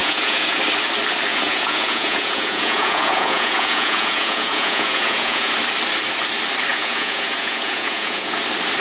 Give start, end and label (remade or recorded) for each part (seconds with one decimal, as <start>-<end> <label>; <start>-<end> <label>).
0.0-0.6 remade; 0.6-1.3 recorded; 1.3-5.5 remade; 5.5-6.7 recorded; 6.7-8.4 remade; 8.4-8.8 recorded